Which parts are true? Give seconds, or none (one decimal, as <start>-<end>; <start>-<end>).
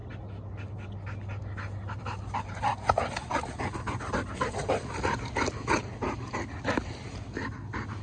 0.0-8.0